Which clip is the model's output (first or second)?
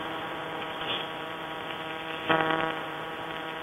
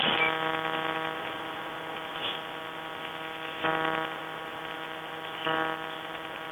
first